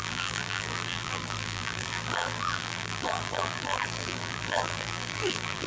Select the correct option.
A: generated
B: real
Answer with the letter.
A